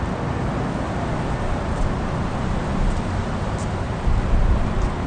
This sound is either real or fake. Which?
real